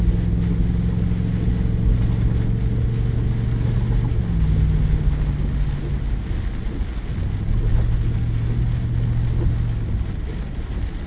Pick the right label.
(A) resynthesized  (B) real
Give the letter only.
B